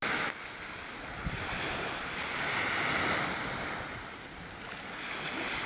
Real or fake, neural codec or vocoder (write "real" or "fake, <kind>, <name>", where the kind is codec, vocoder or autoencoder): real